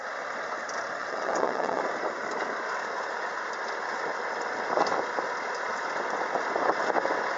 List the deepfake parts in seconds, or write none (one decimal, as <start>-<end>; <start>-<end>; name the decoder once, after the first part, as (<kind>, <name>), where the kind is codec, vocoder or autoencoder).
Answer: 1.0-1.8 (vocoder, WaveNeXt)